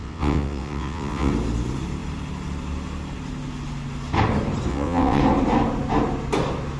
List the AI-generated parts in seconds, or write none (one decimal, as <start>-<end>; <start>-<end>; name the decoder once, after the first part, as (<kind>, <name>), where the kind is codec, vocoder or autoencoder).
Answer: 0.0-1.3 (vocoder, WaveNeXt); 4.7-5.2